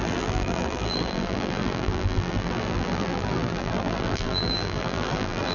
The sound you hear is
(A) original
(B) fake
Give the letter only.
B